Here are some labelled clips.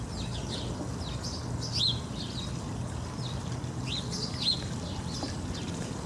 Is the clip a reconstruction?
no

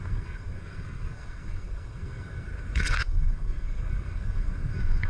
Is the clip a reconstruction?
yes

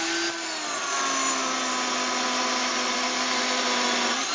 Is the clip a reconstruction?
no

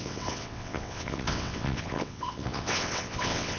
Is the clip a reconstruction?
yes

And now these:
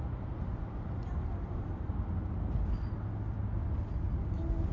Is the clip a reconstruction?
no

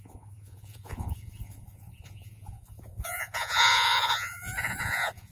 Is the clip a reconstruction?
yes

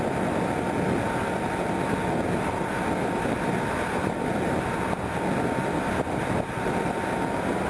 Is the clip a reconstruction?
no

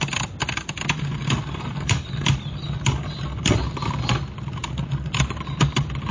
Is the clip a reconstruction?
no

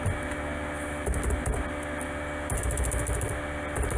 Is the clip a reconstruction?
no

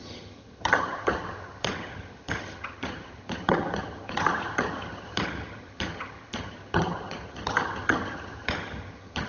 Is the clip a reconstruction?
yes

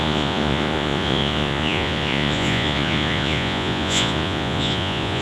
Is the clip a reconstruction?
yes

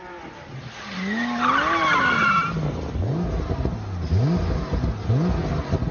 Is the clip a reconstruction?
no